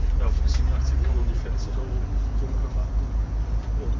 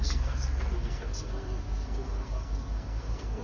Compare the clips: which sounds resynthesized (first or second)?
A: second